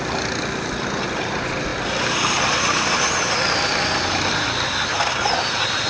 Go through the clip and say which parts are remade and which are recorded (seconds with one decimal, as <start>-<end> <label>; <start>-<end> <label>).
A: 0.0-5.9 recorded